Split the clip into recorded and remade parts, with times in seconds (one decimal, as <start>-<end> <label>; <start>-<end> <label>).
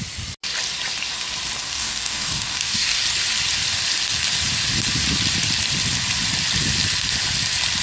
0.0-1.6 recorded; 1.6-3.0 remade; 3.0-7.8 recorded